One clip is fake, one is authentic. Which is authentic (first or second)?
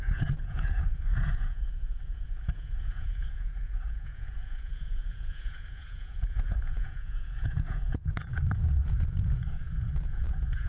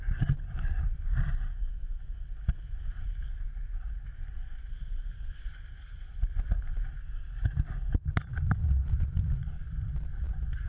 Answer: second